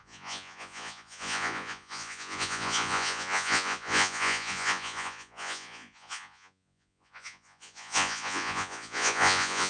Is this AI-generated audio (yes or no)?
yes